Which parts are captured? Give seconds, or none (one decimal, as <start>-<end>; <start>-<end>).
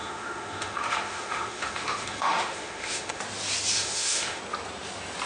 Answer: 3.2-3.7; 4.4-5.3